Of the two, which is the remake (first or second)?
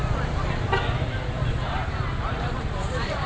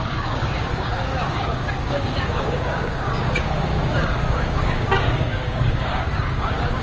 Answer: second